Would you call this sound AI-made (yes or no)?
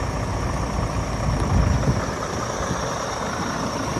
no